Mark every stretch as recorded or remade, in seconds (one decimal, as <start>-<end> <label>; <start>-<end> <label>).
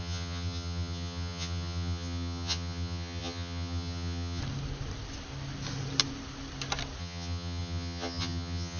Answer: 0.0-4.4 remade; 4.4-7.0 recorded; 7.0-8.8 remade